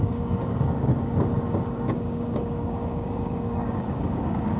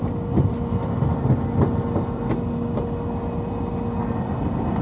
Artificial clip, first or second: first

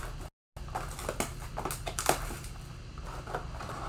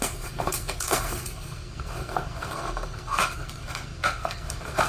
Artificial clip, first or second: second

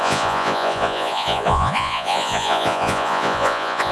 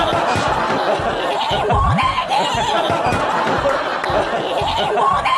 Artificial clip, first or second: first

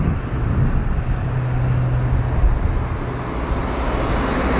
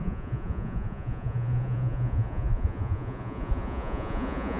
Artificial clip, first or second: second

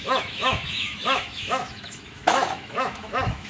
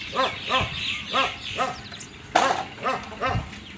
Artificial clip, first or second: first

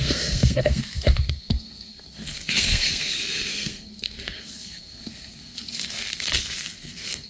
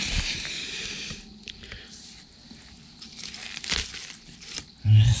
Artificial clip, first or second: first